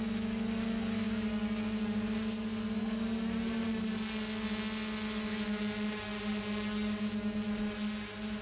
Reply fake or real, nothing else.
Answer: real